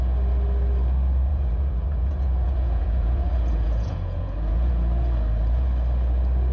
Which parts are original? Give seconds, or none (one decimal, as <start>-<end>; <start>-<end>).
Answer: 0.0-1.3; 4.7-6.5